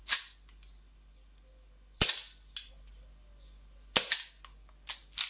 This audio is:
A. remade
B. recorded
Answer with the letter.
B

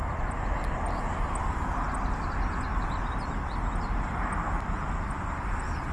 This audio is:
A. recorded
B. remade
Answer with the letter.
A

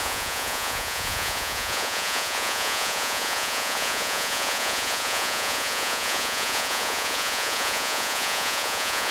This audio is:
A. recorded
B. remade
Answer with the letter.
B